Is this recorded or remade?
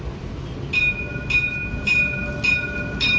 recorded